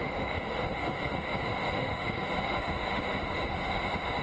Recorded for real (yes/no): no